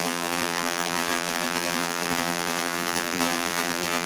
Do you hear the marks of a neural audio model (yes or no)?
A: yes